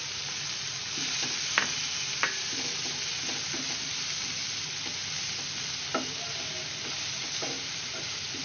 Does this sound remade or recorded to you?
recorded